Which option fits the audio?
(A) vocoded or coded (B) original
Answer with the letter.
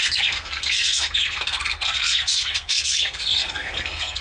A